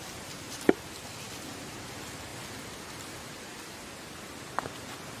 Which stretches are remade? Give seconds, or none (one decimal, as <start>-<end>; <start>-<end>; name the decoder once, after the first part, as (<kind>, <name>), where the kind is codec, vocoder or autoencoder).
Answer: none

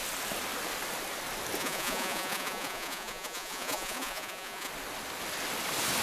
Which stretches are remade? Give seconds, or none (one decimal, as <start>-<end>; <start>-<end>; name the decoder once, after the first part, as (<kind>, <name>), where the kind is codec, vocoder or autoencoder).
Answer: 1.6-4.7 (vocoder, Vocos)

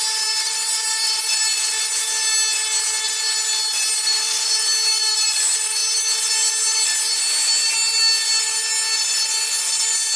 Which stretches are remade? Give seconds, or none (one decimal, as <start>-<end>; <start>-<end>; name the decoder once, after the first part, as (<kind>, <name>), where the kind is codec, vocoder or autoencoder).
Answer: 0.0-1.2 (vocoder, BigVGAN v2); 4.2-5.8; 9.6-10.2